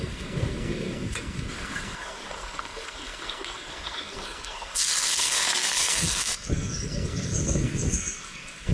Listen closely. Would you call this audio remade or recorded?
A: remade